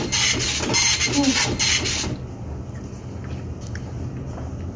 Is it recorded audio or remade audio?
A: recorded